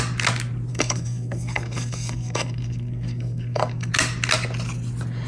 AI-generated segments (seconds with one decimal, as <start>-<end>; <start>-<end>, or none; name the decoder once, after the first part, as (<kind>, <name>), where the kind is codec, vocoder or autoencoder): 0.7-3.9 (codec, SNAC)